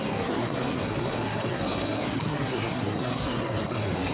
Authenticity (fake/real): fake